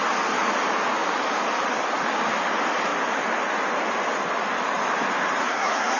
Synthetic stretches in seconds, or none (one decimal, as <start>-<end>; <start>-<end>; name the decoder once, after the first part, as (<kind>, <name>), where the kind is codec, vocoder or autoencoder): 5.4-6.0 (codec, SNAC)